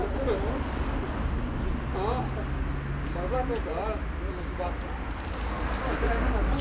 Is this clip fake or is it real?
real